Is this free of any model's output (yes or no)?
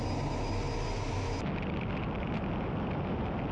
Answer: yes